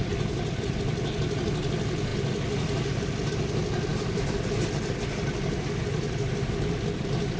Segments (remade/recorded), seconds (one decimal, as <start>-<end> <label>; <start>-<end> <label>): 0.0-7.4 recorded